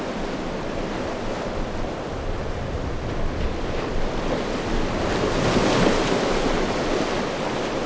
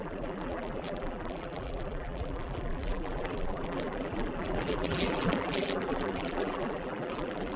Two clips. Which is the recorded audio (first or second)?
first